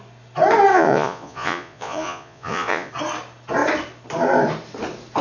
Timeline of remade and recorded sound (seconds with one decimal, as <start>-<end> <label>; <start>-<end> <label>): 0.0-0.7 recorded; 0.7-2.9 remade; 2.9-5.2 recorded